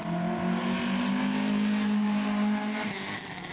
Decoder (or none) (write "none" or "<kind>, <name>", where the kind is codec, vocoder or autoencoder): none